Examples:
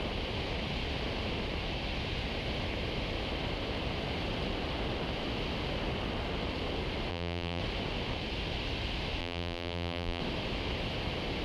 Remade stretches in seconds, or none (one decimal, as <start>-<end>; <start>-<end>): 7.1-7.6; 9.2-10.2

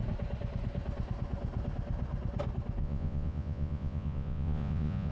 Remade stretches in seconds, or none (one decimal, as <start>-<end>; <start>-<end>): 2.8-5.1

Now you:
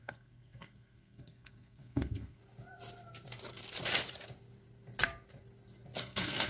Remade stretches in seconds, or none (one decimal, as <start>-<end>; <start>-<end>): 0.0-2.4; 6.0-6.5

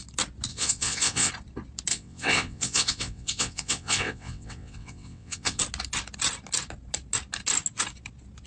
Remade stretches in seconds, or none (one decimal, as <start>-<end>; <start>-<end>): 0.5-1.3; 1.9-5.6